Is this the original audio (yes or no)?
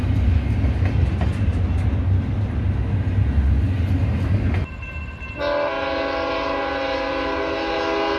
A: yes